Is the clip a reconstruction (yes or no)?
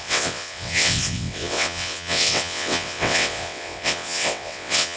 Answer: yes